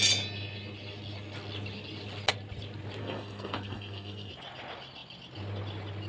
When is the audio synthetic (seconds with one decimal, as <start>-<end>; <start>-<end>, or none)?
3.0-4.3